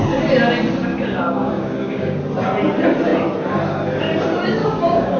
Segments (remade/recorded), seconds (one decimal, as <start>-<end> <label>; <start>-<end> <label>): 0.0-0.9 recorded; 0.9-2.2 remade; 2.2-4.6 recorded; 4.6-5.2 remade